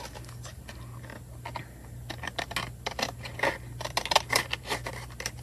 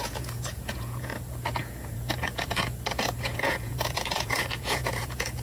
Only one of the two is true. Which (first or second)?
first